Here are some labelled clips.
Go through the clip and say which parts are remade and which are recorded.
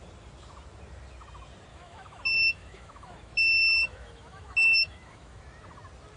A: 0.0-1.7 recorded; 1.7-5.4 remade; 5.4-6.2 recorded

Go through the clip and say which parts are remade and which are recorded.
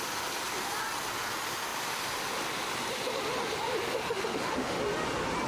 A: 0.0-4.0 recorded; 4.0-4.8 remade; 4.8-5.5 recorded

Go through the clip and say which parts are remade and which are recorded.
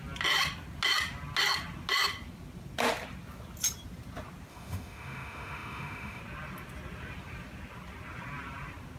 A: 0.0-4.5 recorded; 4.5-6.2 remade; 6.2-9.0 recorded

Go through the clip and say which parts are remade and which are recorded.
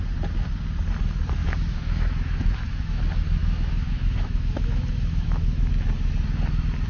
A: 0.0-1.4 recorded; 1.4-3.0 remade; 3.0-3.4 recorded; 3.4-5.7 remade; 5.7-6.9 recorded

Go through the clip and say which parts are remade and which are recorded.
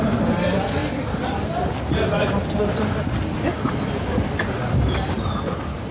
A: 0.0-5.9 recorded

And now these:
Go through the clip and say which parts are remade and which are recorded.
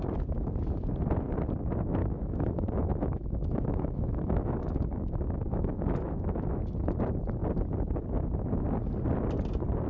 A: 0.0-2.0 recorded; 2.0-6.5 remade; 6.5-9.9 recorded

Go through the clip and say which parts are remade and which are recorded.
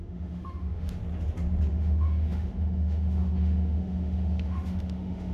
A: 0.0-1.0 remade; 1.0-1.7 recorded; 1.7-5.3 remade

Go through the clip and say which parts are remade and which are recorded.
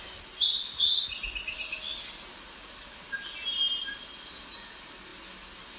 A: 0.0-5.8 recorded